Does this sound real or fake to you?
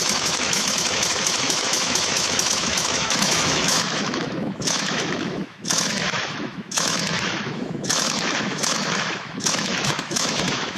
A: fake